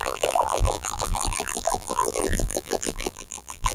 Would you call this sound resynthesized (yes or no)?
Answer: yes